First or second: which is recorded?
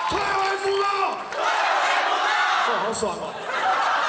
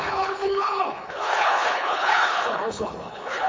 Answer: first